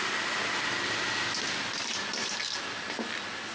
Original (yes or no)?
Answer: yes